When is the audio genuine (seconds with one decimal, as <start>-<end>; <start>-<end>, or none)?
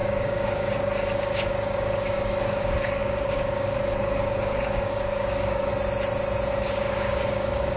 5.7-6.5